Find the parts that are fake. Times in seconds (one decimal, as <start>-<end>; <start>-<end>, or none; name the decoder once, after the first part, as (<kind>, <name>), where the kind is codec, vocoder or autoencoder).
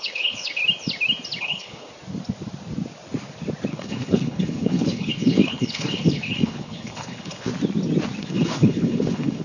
0.0-0.6 (codec, HILCodec); 1.4-1.9; 3.7-7.5; 8.2-9.4